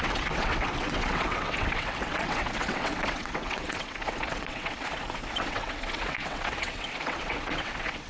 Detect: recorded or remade remade